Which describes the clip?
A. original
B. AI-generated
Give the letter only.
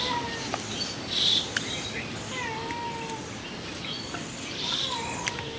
A